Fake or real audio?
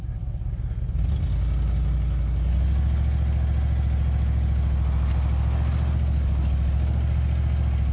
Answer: real